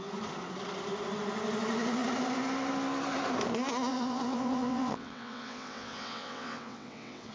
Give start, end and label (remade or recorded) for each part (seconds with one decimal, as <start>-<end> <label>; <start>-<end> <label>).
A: 0.0-3.9 recorded; 3.9-7.3 remade